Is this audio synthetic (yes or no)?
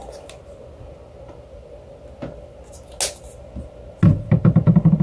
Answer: no